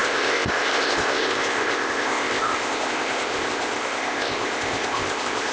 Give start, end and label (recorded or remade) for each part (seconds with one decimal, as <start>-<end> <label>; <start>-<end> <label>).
0.0-5.5 remade